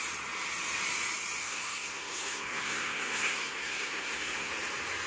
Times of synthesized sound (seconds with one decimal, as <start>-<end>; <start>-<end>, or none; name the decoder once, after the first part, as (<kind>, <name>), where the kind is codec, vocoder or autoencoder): 1.4-4.5 (codec, SNAC)